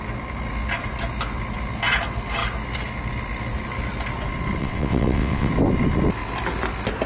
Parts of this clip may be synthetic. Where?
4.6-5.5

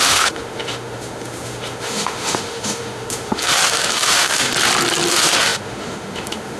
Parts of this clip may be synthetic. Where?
0.0-4.5; 5.1-6.6

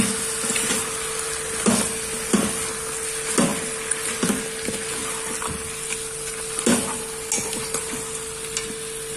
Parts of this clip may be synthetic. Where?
none

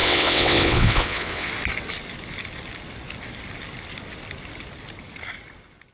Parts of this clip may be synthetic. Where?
0.0-1.5

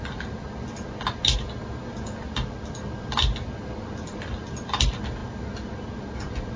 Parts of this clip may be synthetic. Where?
none

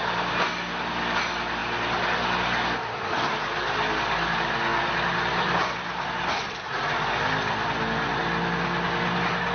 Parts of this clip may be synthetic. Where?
4.7-6.1

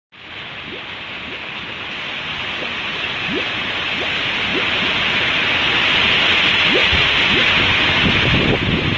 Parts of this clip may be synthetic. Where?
6.8-7.3

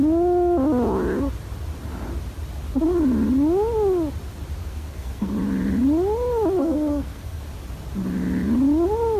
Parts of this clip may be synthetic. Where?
4.6-5.3; 6.6-7.4